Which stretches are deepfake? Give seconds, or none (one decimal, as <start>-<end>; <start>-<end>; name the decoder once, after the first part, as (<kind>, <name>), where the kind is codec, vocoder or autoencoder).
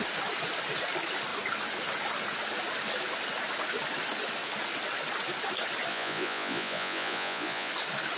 5.9-7.7 (vocoder, Vocos)